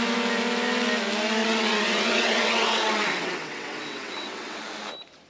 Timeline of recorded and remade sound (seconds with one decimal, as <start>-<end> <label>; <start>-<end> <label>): 0.0-1.4 recorded; 1.4-4.6 remade; 4.6-5.3 recorded